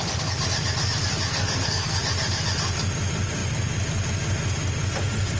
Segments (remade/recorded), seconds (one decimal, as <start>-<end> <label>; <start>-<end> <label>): 0.0-1.3 recorded; 1.3-2.0 remade; 2.0-5.4 recorded